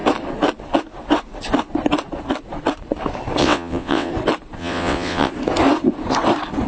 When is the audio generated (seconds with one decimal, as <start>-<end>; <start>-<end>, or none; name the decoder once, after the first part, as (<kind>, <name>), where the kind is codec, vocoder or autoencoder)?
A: 3.4-4.1 (vocoder, WaveNeXt); 4.6-5.3